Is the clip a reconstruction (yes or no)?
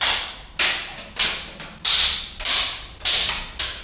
no